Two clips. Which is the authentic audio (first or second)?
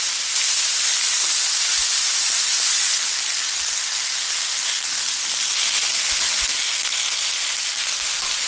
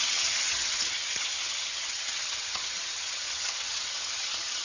first